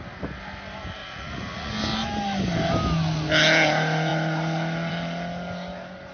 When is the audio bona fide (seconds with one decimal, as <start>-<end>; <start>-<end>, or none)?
0.0-1.0; 1.7-6.1